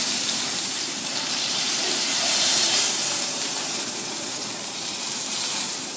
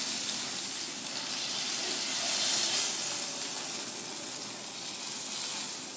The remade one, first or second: first